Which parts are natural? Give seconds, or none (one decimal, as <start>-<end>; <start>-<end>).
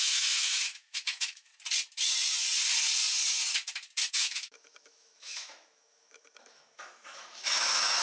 1.5-4.1